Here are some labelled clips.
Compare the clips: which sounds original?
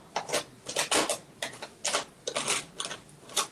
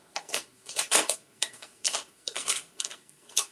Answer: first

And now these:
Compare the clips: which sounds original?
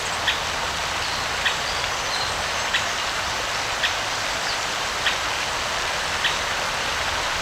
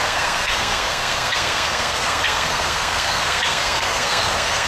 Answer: first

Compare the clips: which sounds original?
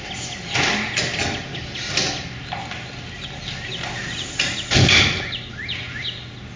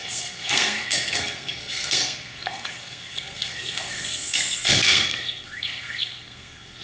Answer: first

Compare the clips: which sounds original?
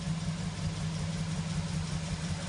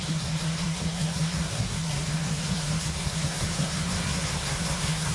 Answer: first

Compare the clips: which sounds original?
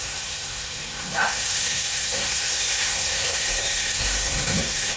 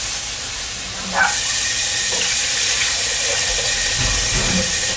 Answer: second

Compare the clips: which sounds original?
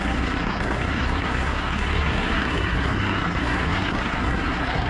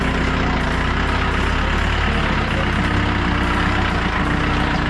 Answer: second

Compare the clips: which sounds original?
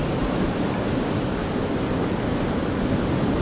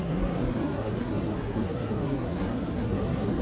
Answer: first